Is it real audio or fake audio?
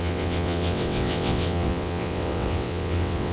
fake